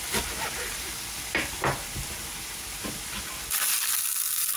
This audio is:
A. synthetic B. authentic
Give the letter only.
A